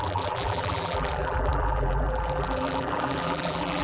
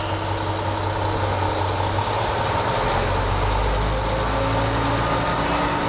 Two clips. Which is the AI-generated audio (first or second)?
first